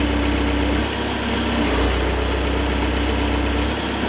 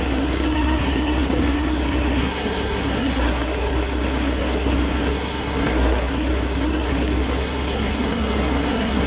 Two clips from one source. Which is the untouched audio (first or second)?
first